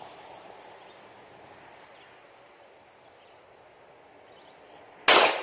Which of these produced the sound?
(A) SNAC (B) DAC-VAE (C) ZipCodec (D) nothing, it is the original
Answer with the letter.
D